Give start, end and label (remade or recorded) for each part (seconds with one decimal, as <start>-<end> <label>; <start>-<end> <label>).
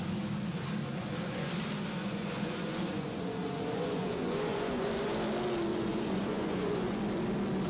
0.0-0.8 recorded; 0.8-1.5 remade; 1.5-2.0 recorded; 2.0-4.9 remade; 4.9-5.7 recorded; 5.7-7.0 remade; 7.0-7.7 recorded